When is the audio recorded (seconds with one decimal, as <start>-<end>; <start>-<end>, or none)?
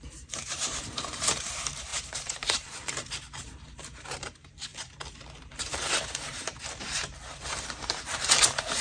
4.7-5.4